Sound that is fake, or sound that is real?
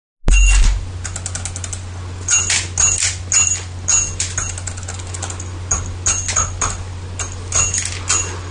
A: real